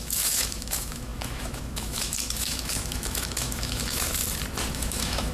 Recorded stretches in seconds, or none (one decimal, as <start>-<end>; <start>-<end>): 4.2-4.7